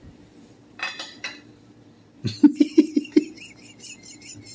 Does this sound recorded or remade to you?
remade